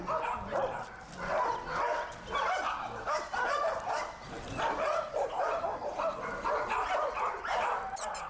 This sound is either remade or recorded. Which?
recorded